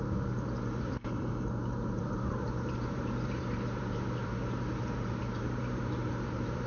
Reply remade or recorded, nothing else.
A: remade